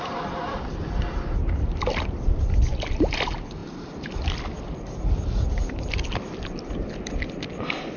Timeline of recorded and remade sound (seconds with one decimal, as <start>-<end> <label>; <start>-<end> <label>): 0.0-8.0 recorded

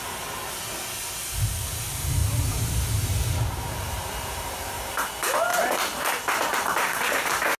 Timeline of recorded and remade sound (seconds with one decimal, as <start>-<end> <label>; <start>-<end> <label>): 0.0-2.2 recorded; 2.2-5.1 remade; 5.1-5.5 recorded; 5.5-6.1 remade; 6.1-7.6 recorded

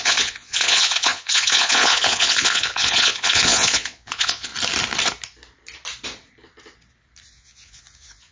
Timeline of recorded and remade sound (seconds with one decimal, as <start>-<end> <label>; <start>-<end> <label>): 0.0-4.5 remade; 4.5-7.3 recorded; 7.3-8.3 remade

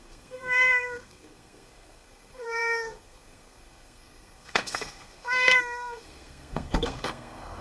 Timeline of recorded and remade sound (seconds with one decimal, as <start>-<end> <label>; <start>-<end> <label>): 0.0-7.6 remade

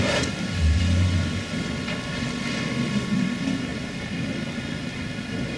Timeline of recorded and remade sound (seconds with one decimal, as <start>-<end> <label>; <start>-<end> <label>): 0.0-5.6 recorded

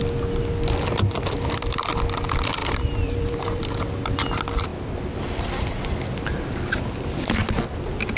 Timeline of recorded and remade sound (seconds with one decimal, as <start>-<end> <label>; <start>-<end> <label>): 0.0-2.6 recorded; 2.6-3.7 remade; 3.7-8.2 recorded

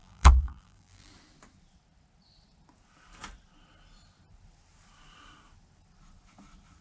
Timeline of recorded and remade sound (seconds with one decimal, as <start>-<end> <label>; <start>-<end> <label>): 0.0-1.1 remade; 1.1-6.8 recorded